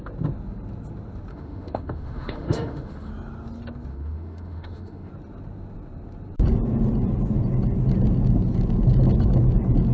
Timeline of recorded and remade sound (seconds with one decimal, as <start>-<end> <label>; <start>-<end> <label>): 0.0-1.3 recorded; 1.3-3.1 remade; 3.1-3.9 recorded; 3.9-5.1 remade; 5.1-9.9 recorded